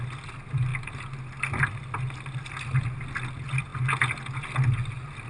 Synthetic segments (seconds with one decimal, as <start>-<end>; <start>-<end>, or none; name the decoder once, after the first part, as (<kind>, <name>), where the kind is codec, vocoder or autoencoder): none